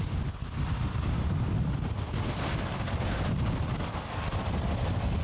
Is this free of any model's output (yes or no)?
yes